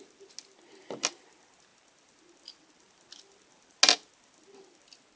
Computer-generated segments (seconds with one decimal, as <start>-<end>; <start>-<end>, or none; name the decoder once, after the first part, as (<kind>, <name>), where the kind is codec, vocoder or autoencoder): none